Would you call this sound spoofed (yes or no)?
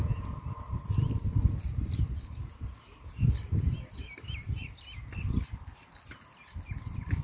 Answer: no